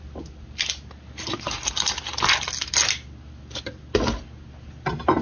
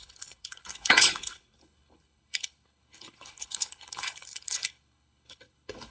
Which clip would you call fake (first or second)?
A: second